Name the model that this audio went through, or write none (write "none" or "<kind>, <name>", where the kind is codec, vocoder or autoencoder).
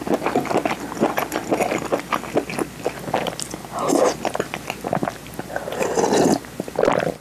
none